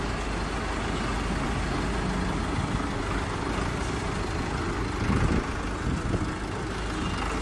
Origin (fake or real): real